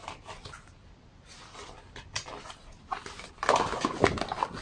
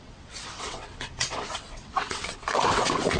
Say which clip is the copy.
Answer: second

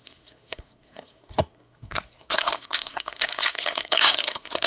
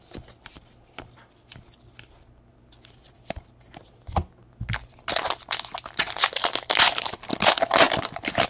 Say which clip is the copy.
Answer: first